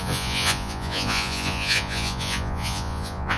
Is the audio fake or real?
fake